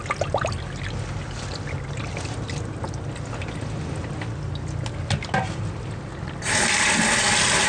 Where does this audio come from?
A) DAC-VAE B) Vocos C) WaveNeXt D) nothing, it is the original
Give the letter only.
D